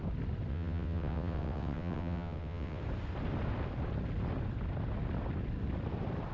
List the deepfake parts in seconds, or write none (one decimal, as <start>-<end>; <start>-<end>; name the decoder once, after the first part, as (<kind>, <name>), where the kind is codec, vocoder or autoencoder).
0.5-2.8 (vocoder, WaveNeXt)